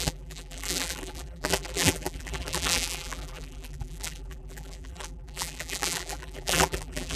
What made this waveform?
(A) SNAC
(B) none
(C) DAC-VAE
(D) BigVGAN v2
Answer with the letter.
D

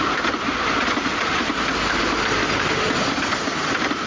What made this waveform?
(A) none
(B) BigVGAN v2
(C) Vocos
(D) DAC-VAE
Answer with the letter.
A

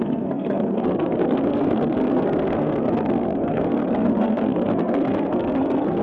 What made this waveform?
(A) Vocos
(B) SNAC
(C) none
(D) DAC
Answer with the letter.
B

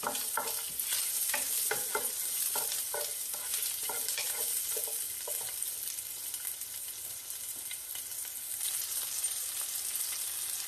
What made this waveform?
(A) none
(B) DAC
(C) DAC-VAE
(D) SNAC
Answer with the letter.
A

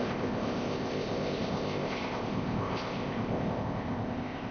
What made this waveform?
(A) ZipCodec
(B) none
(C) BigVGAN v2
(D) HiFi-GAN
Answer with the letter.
A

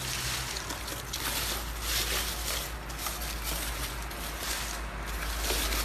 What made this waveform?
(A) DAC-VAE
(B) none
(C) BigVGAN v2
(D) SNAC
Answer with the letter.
B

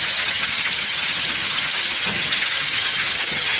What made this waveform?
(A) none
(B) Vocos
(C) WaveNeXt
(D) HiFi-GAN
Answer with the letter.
D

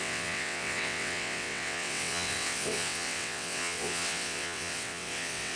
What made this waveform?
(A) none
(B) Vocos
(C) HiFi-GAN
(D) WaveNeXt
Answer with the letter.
D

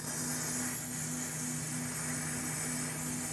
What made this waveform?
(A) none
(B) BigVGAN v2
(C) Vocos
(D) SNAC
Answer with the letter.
A